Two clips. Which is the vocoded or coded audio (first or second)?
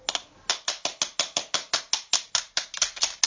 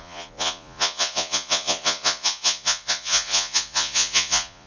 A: second